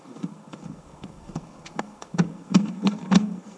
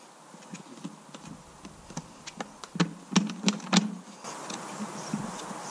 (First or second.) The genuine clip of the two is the second